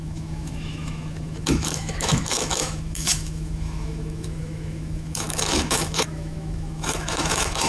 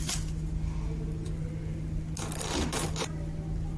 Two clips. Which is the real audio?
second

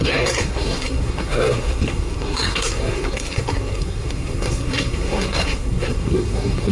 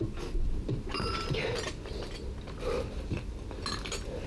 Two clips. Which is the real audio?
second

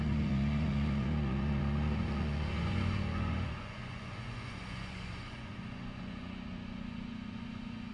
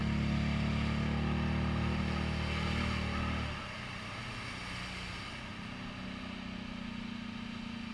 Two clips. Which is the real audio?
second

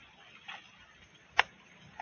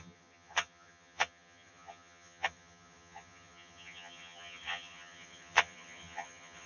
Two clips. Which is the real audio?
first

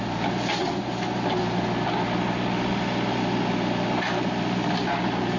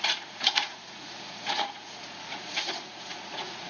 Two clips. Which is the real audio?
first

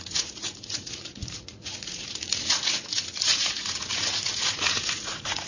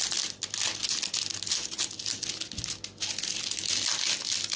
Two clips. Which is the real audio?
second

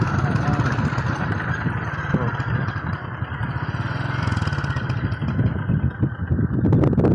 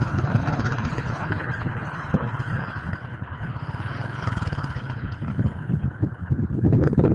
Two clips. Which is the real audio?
first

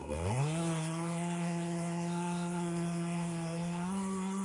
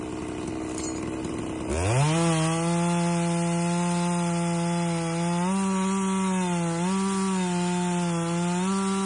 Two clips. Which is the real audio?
second